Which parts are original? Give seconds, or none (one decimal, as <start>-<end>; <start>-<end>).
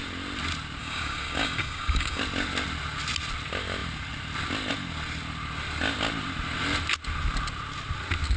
0.0-0.8; 2.2-8.4